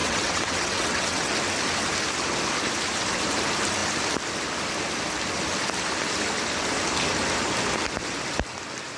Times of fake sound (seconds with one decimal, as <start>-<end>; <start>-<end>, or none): 0.0-1.3